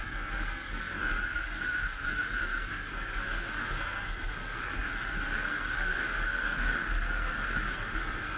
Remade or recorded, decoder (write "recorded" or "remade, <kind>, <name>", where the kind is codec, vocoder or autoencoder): remade, codec, SNAC